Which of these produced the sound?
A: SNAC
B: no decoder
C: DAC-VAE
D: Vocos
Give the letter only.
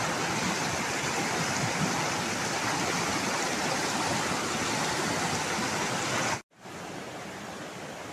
B